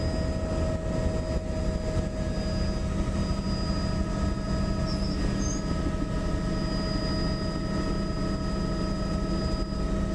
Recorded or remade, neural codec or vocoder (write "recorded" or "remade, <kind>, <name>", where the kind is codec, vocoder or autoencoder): recorded